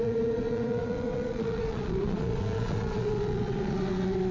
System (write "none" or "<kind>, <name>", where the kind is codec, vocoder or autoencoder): vocoder, Vocos